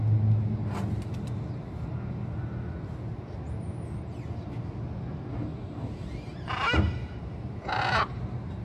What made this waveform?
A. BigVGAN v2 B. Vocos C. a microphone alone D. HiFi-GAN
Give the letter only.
C